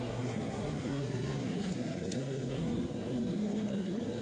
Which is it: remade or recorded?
remade